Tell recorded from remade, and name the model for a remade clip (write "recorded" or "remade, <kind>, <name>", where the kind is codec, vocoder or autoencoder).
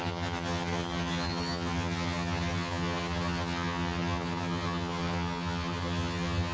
remade, vocoder, HiFi-GAN